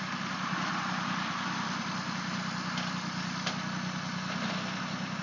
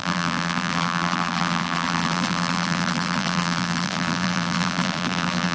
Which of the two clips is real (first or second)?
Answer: first